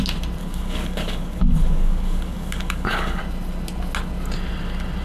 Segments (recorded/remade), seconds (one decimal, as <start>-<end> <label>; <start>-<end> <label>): 0.0-0.4 recorded; 0.4-3.2 remade; 3.2-5.0 recorded